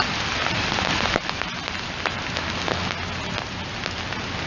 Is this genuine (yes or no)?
yes